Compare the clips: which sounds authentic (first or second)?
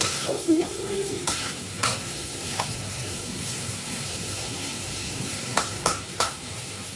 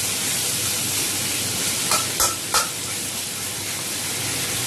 second